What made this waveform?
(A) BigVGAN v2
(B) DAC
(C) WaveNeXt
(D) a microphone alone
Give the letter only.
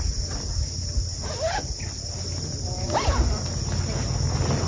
D